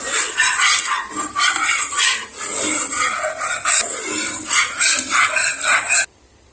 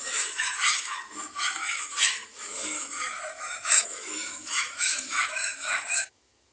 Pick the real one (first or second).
first